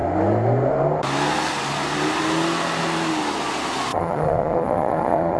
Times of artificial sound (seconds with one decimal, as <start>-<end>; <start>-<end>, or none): 3.9-5.4